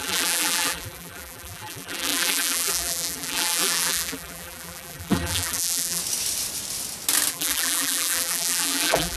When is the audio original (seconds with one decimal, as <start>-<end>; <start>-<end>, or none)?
6.0-7.3